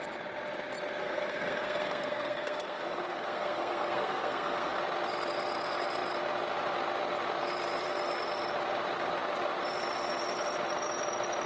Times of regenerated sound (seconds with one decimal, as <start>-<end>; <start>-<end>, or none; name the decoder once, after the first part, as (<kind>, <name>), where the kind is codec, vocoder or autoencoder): 1.0-4.8 (codec, SNAC)